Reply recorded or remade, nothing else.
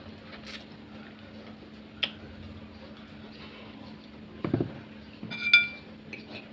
recorded